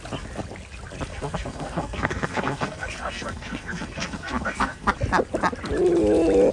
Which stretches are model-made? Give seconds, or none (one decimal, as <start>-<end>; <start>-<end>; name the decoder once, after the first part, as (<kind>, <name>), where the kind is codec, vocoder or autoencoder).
1.1-4.9 (codec, SNAC)